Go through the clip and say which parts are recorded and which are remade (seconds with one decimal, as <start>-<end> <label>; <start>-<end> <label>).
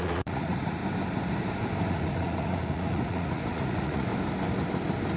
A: 0.0-0.8 remade; 0.8-1.9 recorded; 1.9-4.1 remade; 4.1-5.2 recorded